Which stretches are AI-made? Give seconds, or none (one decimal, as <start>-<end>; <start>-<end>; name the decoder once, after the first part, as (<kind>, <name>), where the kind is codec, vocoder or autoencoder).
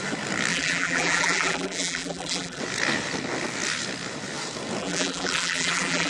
0.5-2.6 (vocoder, BigVGAN v2); 4.8-6.1